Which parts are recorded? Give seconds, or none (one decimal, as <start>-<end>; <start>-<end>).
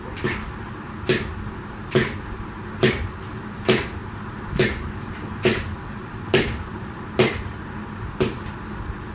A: 0.0-4.0; 7.0-9.1